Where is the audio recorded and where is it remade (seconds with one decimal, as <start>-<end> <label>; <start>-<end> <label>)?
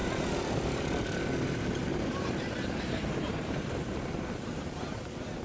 0.0-0.8 remade; 0.8-1.9 recorded; 1.9-5.4 remade